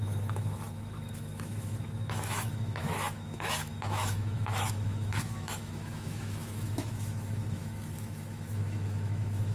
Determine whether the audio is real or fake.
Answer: fake